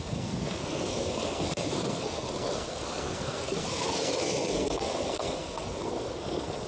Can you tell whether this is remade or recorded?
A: remade